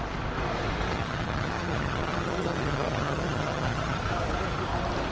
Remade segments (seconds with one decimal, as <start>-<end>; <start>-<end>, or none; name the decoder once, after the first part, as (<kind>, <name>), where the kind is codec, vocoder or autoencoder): 0.9-4.0 (vocoder, HiFi-GAN)